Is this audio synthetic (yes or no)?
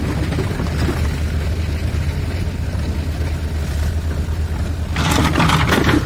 no